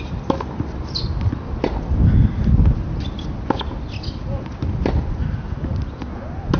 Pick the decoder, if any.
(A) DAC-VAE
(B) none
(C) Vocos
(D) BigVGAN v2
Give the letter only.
B